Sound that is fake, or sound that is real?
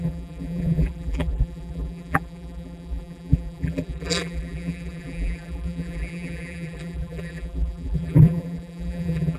fake